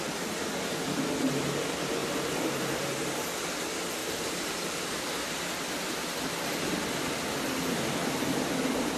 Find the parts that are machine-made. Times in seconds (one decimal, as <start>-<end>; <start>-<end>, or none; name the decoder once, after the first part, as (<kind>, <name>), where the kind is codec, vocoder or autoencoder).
2.0-2.9 (vocoder, BigVGAN v2); 4.0-5.1